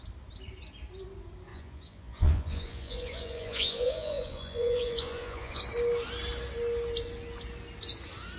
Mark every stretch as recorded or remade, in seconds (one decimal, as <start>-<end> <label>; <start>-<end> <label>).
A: 0.0-1.5 recorded; 1.5-5.6 remade; 5.6-8.4 recorded